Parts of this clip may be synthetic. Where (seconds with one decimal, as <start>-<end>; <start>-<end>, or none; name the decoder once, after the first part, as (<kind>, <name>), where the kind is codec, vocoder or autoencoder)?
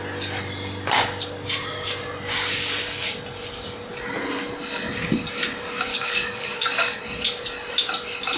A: 5.9-7.0 (codec, DAC)